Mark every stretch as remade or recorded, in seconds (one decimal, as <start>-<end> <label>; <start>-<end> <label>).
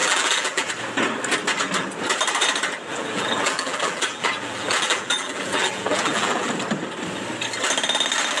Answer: 0.0-0.7 remade; 0.7-2.9 recorded; 2.9-6.5 remade; 6.5-8.4 recorded